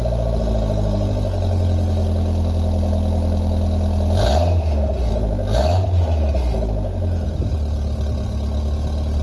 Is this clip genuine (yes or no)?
yes